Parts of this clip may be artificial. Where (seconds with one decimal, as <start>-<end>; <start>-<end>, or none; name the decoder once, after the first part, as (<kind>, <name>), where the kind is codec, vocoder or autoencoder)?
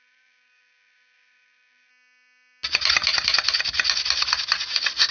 0.0-1.9 (codec, DAC)